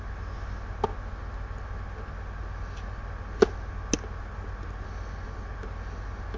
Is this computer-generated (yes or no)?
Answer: no